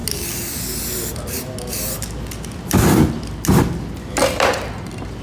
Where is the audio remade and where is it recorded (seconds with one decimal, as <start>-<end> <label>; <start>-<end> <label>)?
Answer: 0.0-5.2 recorded